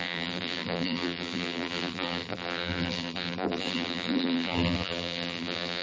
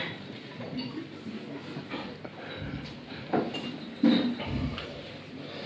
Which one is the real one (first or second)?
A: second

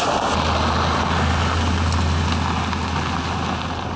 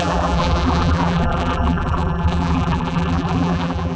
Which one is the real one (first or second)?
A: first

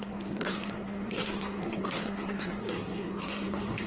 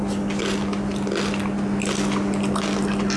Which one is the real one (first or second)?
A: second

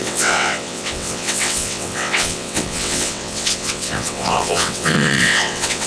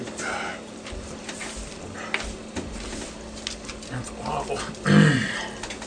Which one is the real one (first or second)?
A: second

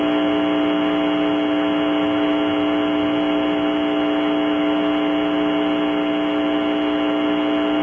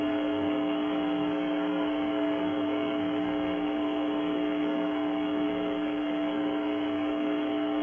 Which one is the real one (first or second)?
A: first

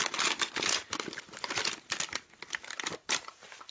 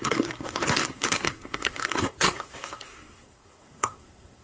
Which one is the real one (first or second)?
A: first